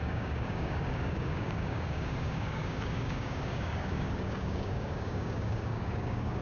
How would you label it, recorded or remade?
remade